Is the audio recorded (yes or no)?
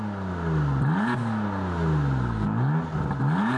yes